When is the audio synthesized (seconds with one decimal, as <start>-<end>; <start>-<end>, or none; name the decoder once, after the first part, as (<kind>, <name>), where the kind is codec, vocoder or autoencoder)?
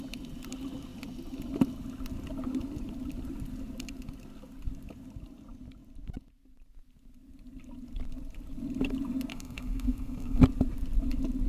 9.3-10.4 (codec, SNAC)